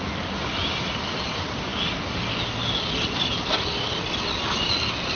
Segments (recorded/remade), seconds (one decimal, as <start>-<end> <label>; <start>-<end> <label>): 0.0-5.2 recorded